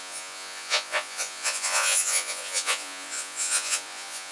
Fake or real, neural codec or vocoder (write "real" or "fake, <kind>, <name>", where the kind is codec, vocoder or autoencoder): fake, vocoder, Vocos